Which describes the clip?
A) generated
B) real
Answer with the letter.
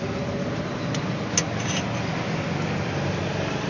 B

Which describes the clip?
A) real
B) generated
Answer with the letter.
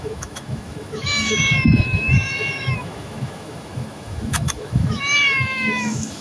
B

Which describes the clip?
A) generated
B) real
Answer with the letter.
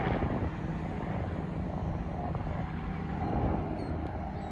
B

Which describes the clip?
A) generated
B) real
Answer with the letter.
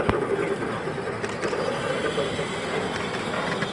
B